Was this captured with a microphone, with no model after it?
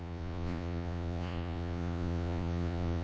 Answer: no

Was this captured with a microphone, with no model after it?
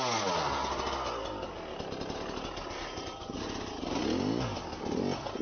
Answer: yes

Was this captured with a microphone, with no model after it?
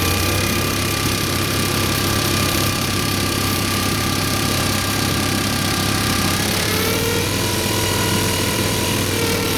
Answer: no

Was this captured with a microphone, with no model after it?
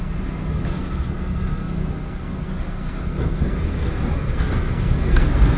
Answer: no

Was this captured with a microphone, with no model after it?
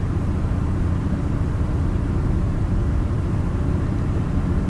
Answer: no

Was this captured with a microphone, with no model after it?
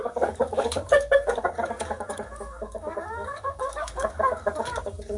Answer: no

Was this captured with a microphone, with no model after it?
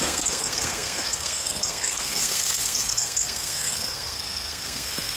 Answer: no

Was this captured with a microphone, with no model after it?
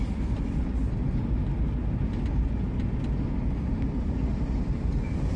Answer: yes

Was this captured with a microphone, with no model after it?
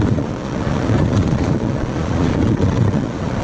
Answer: no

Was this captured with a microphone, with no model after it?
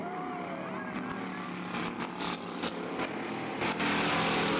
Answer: yes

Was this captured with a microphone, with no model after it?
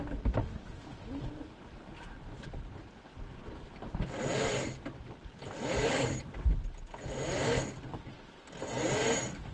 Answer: yes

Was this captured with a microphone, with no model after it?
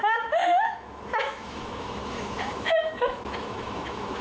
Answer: no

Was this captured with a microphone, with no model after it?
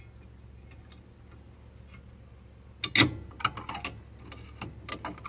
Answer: yes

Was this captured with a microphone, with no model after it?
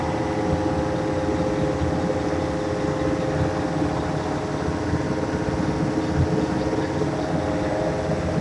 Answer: yes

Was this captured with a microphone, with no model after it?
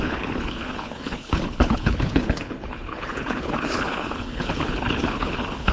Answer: no